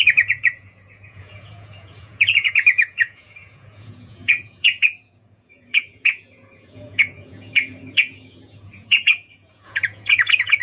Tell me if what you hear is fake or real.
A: fake